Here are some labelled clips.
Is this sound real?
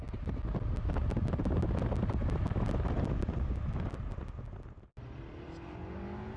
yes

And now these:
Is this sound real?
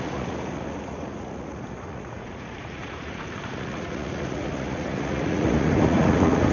no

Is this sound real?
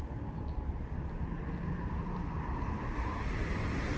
yes